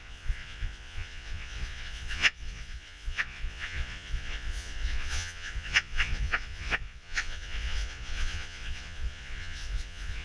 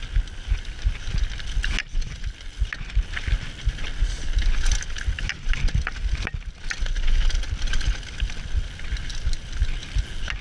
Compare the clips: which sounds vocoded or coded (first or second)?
first